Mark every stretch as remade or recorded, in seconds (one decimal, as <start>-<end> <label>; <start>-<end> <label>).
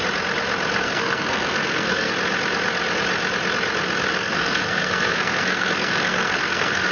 0.0-0.8 recorded; 0.8-2.1 remade; 2.1-4.1 recorded; 4.1-6.9 remade